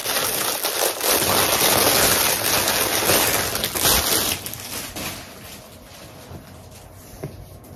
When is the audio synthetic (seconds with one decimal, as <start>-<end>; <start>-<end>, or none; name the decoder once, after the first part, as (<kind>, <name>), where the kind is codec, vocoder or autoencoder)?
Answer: none